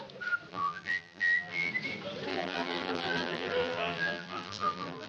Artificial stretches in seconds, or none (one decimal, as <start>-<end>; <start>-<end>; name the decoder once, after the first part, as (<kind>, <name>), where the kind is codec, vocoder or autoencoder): 0.5-1.7 (vocoder, BigVGAN v2); 2.3-5.1